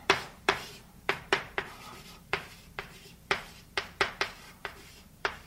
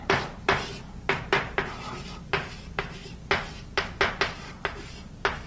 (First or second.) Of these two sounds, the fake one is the first